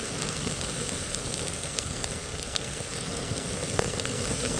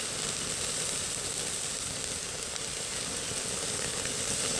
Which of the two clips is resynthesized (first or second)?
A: first